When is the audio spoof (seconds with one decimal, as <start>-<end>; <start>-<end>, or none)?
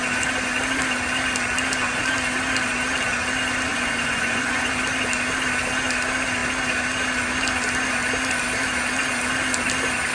3.7-4.7